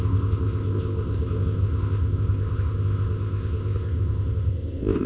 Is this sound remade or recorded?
remade